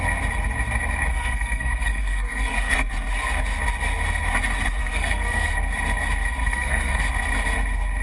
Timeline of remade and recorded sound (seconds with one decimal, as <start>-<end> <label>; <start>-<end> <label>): 0.0-1.1 recorded; 1.1-2.9 remade; 2.9-4.8 recorded; 4.8-5.5 remade; 5.5-6.4 recorded; 6.4-7.0 remade; 7.0-8.0 recorded